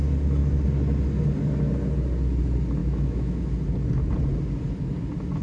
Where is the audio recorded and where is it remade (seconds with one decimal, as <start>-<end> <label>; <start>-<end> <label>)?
0.0-2.8 recorded; 2.8-3.4 remade; 3.4-5.4 recorded